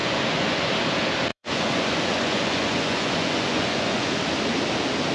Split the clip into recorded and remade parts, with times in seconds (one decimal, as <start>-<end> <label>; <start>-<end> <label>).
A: 0.0-0.7 remade; 0.7-1.3 recorded; 1.3-4.1 remade; 4.1-5.1 recorded